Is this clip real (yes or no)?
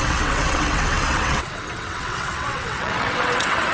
no